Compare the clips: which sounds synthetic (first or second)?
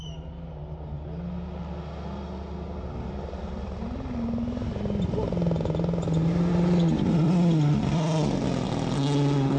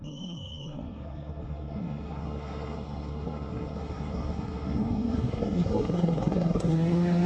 second